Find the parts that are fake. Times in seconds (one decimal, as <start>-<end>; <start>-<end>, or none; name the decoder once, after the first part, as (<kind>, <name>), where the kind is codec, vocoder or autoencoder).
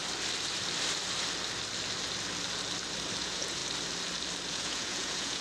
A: 3.2-3.6 (vocoder, Vocos); 4.5-5.4